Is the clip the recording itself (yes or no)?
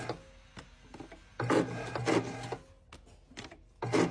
yes